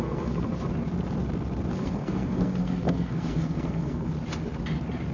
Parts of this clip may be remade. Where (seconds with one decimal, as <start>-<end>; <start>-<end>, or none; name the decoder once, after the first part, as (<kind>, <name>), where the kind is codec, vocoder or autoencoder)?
0.0-0.5 (codec, SNAC); 1.7-4.1